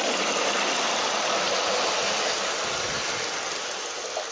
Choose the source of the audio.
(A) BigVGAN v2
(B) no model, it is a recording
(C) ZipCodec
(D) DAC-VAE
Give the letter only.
B